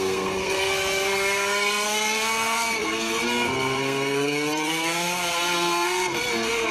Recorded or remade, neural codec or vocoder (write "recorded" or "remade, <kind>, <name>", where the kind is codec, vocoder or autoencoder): remade, codec, SNAC